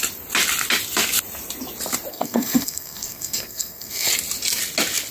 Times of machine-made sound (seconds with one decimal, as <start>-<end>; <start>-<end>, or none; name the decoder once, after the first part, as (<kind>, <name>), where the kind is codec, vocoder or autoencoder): 2.1-4.1 (codec, SNAC)